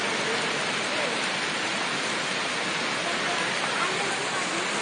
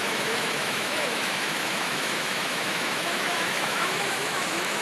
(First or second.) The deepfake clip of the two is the second